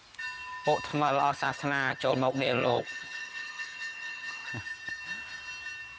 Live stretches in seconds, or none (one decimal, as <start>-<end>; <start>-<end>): 0.0-0.9; 4.5-6.0